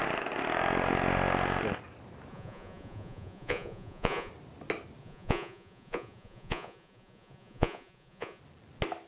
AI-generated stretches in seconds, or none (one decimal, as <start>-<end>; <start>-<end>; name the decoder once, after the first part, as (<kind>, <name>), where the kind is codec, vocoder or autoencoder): 2.3-4.3 (vocoder, Vocos); 5.0-8.4